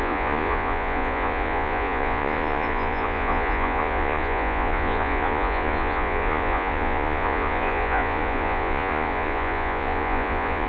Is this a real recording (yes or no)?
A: no